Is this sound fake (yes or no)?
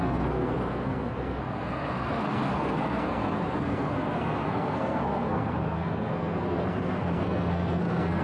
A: yes